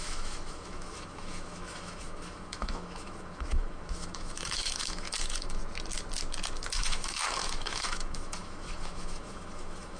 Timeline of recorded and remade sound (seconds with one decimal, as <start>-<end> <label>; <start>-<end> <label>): 0.0-5.6 remade; 5.6-6.8 recorded; 6.8-10.0 remade